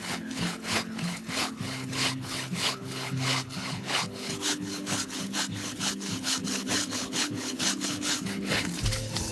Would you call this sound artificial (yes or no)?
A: yes